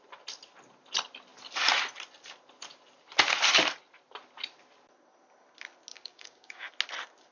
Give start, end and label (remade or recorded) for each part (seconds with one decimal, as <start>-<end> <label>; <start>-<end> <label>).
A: 0.0-5.9 recorded; 5.9-6.7 remade; 6.7-7.3 recorded